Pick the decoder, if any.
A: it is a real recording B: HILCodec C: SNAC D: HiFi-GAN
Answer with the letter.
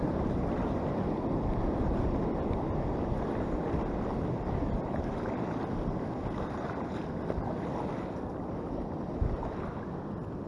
A